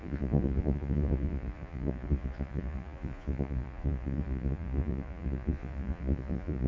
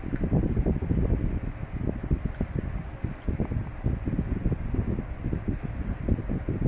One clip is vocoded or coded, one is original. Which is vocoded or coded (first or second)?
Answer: first